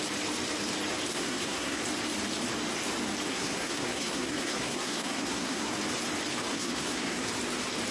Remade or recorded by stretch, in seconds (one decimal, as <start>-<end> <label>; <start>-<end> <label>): 0.0-1.1 recorded; 1.1-1.8 remade; 1.8-3.3 recorded; 3.3-5.7 remade; 5.7-6.5 recorded; 6.5-7.3 remade; 7.3-7.9 recorded